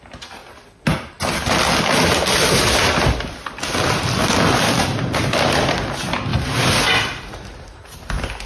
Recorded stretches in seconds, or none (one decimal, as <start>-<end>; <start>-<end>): 0.0-8.5